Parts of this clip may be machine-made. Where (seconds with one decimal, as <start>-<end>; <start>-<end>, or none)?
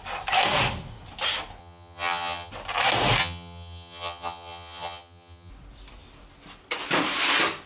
1.6-2.5; 3.2-5.5